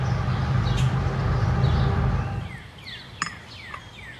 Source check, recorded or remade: recorded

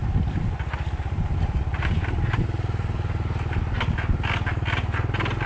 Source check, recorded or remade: recorded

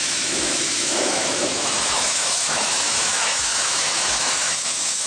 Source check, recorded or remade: remade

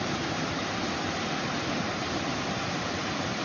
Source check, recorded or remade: remade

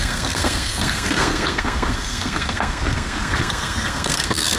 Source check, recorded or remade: remade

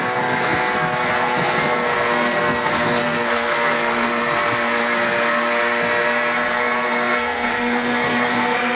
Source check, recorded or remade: remade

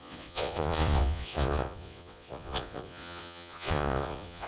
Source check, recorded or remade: remade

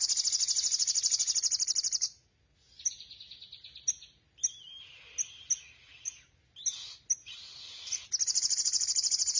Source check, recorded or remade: recorded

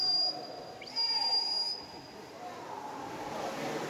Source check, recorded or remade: recorded